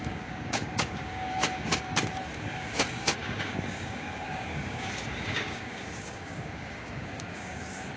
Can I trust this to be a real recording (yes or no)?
no